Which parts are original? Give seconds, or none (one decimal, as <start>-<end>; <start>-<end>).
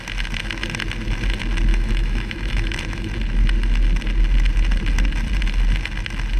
0.0-1.7; 3.1-6.4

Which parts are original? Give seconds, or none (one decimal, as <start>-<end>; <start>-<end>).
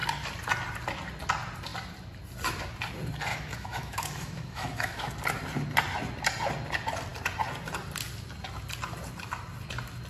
0.0-3.3; 5.1-10.1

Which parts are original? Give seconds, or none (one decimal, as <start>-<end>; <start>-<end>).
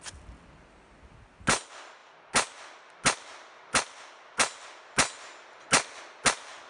0.0-6.7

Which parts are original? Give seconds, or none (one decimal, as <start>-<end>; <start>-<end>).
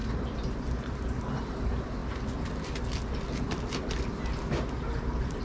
0.0-5.4